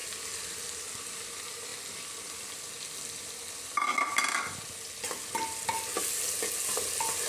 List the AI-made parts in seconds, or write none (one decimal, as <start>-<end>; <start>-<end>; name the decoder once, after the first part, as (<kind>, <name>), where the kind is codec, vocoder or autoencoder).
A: none